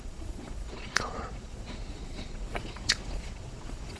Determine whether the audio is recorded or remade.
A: remade